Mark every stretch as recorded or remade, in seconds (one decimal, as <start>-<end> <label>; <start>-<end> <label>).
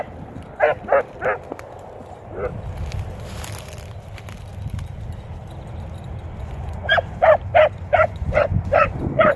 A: 0.0-6.4 recorded; 6.4-7.3 remade; 7.3-7.9 recorded; 7.9-9.4 remade